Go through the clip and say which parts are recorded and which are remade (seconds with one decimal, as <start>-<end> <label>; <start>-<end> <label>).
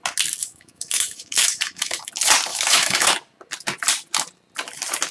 0.0-0.4 recorded; 0.4-2.1 remade; 2.1-2.5 recorded; 2.5-3.1 remade; 3.1-5.1 recorded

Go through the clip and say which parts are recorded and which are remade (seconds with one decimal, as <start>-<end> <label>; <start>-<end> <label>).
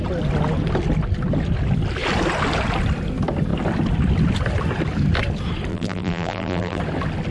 0.0-5.7 recorded; 5.7-6.8 remade; 6.8-7.3 recorded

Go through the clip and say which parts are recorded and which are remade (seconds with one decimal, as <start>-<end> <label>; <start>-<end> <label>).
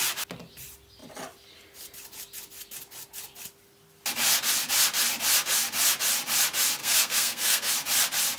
0.0-6.8 recorded; 6.8-7.7 remade; 7.7-8.4 recorded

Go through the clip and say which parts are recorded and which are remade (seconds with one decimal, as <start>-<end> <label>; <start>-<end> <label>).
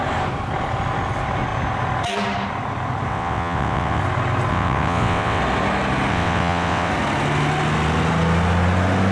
0.0-3.1 recorded; 3.1-4.0 remade; 4.0-4.5 recorded; 4.5-5.4 remade; 5.4-6.1 recorded; 6.1-6.9 remade; 6.9-9.1 recorded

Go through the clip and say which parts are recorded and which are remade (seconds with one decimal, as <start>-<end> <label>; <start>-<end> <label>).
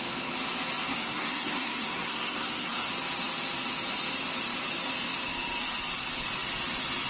0.0-0.9 recorded; 0.9-2.9 remade; 2.9-7.1 recorded